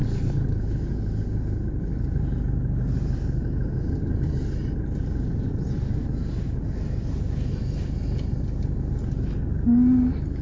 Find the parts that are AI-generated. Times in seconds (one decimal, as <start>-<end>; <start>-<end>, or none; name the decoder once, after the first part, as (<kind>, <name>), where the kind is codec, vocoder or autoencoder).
none